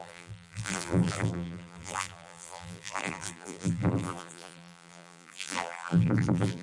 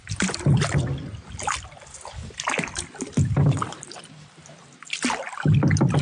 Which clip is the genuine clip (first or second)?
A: second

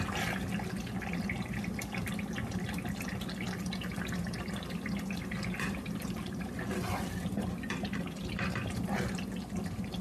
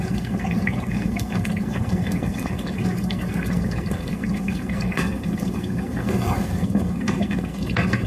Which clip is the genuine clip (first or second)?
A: first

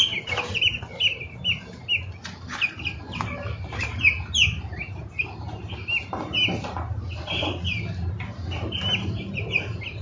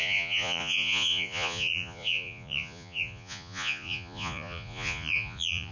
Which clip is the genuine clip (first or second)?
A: first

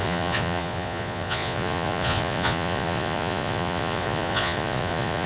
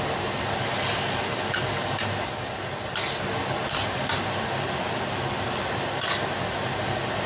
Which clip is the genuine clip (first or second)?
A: second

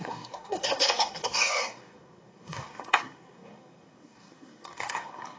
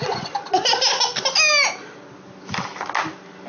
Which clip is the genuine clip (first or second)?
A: second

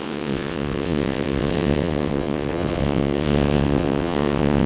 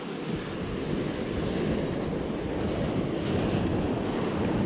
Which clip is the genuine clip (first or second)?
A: second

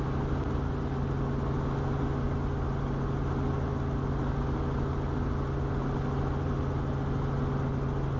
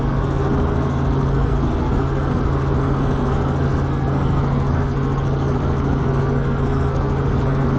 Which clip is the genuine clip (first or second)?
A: first